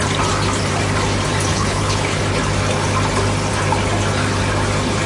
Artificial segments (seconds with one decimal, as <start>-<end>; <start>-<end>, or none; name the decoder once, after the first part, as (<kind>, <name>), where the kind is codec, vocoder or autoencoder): 1.5-2.2 (codec, HILCodec)